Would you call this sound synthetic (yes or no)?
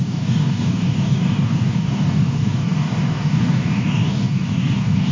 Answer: yes